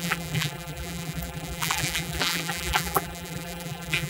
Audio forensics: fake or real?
fake